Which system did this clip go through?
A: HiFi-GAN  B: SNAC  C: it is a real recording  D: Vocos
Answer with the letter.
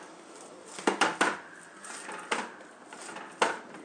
C